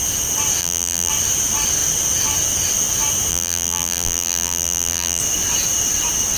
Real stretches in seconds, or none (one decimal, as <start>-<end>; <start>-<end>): 0.0-0.6; 1.1-3.3; 5.2-6.4